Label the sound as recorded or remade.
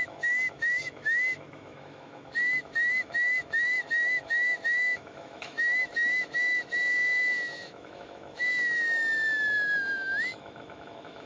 remade